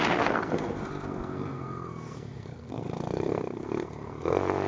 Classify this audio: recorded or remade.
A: remade